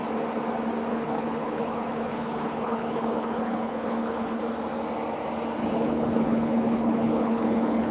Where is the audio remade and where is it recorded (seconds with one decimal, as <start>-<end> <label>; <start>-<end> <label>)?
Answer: 0.0-0.9 recorded; 0.9-4.4 remade; 4.4-5.6 recorded; 5.6-7.9 remade